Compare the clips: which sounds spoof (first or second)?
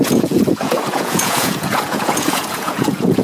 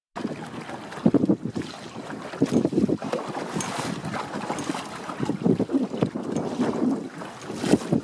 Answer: first